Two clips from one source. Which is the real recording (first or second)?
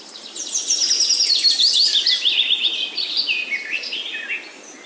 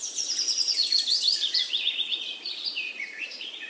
first